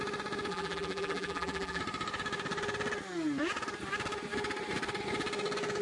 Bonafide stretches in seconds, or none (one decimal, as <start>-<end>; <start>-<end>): 0.0-0.5; 1.8-5.8